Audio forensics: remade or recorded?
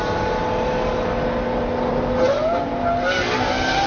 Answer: recorded